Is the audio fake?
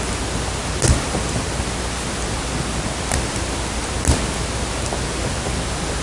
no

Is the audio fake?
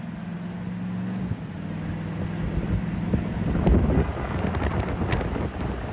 no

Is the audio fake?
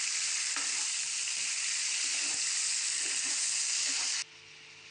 no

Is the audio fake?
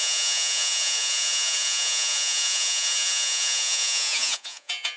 yes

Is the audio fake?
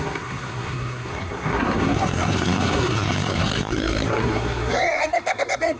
yes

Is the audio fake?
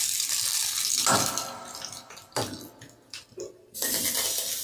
no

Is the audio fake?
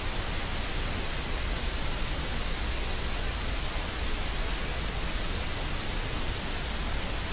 no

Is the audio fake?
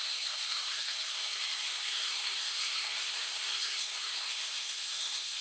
yes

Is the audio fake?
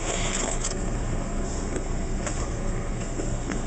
yes